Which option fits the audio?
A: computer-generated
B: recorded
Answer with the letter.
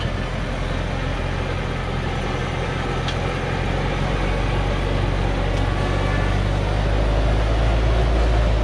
B